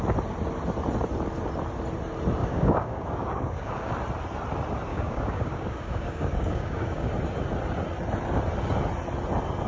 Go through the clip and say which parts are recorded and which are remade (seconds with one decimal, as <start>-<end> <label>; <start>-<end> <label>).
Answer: 0.0-2.4 recorded; 2.4-3.9 remade; 3.9-4.9 recorded; 4.9-7.1 remade; 7.1-9.7 recorded